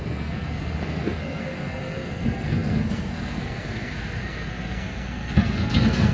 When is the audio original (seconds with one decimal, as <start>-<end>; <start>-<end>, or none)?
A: none